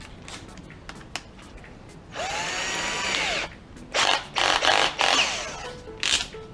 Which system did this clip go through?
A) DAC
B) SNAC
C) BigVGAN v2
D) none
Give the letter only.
D